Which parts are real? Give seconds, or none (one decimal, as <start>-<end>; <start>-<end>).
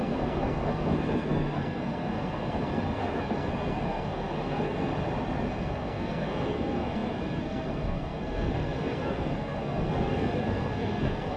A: 4.9-5.5